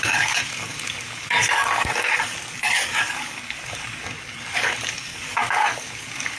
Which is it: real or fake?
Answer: fake